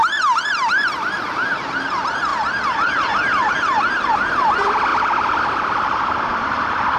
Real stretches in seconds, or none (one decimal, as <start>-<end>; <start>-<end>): 0.0-1.3; 2.3-3.5; 4.9-5.4